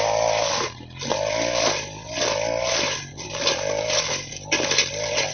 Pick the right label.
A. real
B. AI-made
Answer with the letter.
A